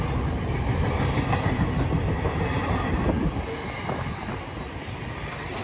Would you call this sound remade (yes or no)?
no